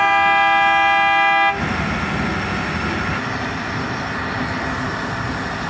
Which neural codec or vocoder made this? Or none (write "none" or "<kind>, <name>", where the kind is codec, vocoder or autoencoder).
none